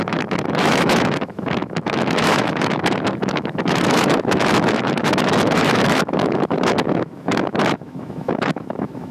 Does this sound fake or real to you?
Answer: fake